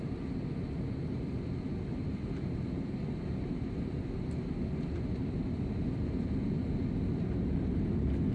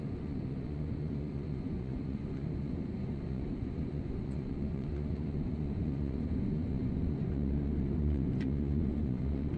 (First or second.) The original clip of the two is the first